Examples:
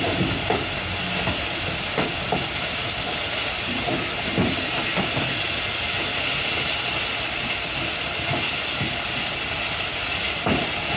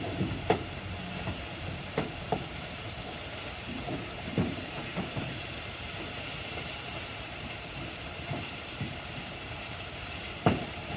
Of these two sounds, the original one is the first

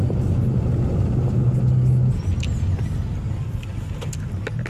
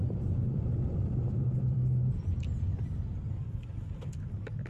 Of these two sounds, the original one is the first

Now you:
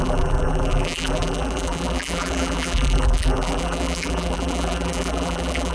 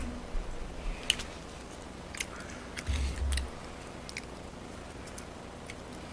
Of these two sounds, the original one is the second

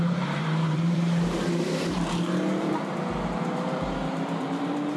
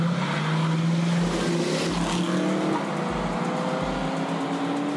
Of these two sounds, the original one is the second